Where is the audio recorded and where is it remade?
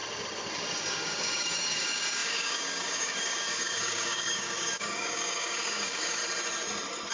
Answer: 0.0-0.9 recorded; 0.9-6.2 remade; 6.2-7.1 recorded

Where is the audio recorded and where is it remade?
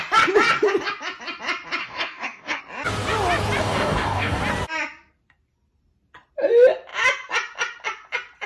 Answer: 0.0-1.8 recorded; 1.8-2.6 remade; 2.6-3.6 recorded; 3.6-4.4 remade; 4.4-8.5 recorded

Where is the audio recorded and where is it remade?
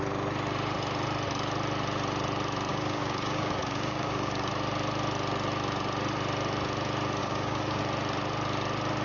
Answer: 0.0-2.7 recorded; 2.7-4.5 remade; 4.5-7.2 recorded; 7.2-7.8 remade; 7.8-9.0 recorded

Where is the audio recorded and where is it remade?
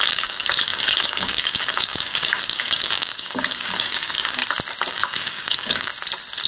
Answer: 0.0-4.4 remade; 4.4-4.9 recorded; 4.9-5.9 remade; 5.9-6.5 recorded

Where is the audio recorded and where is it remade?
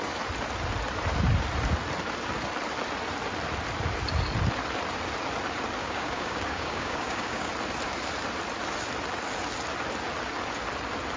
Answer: 0.0-5.8 recorded; 5.8-7.5 remade; 7.5-11.2 recorded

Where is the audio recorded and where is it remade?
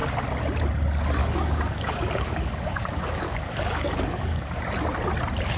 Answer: 0.0-1.2 recorded; 1.2-4.6 remade; 4.6-5.6 recorded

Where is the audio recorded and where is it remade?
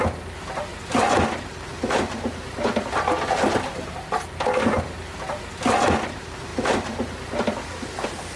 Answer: 0.0-8.4 recorded